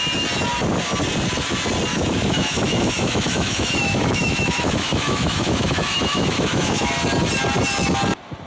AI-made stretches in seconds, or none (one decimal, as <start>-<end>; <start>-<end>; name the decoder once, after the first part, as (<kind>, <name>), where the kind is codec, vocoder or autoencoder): 1.9-6.9 (autoencoder, DAC-VAE)